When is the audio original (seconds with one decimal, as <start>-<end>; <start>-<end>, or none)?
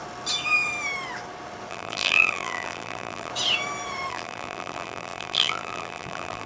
0.0-1.7; 3.3-4.1